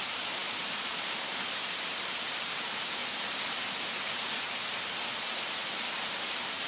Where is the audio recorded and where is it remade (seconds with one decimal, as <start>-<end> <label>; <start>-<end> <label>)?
0.0-3.0 remade; 3.0-6.7 recorded